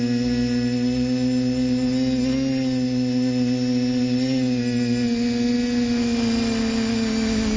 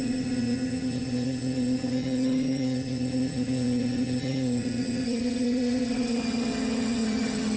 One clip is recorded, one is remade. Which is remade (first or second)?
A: second